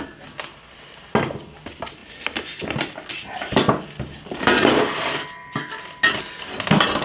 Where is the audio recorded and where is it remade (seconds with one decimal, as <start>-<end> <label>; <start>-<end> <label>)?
0.0-7.0 recorded